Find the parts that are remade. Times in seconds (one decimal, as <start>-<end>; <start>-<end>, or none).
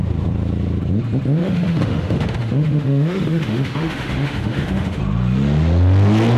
1.4-5.0